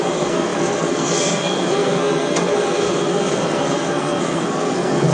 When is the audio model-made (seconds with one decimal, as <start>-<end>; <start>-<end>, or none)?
0.0-5.1